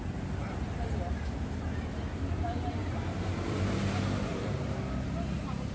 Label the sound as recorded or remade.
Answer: remade